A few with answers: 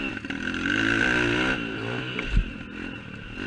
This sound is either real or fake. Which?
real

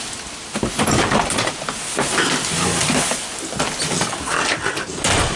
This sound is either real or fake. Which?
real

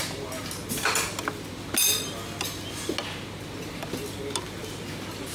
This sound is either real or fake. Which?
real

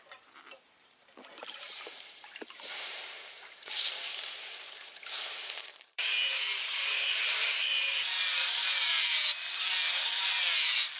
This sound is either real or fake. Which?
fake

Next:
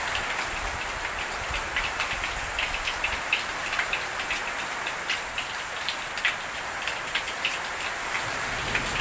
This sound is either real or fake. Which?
fake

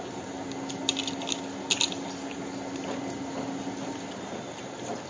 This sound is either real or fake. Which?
real